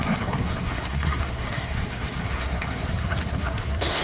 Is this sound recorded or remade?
remade